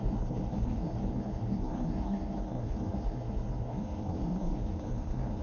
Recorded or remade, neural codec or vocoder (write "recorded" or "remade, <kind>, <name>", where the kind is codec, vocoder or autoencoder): remade, codec, SNAC